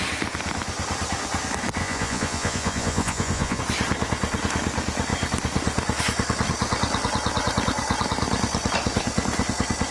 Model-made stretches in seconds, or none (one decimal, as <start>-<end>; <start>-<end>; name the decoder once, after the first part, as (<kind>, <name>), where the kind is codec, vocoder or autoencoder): 1.8-3.6 (vocoder, Vocos)